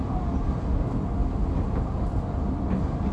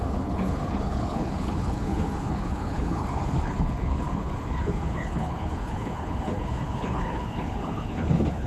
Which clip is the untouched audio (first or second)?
first